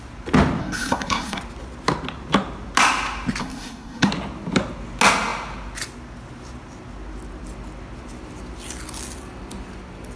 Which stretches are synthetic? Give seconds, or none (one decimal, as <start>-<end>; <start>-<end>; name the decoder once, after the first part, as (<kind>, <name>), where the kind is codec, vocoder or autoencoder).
0.6-1.4 (codec, SNAC); 3.4-4.1